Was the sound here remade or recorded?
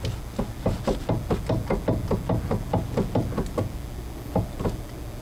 recorded